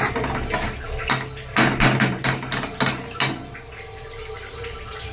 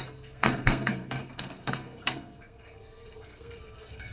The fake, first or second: second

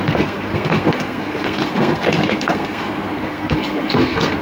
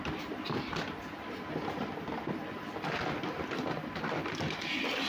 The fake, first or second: first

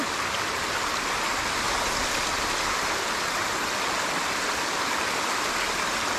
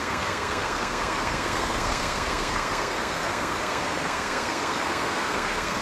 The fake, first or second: second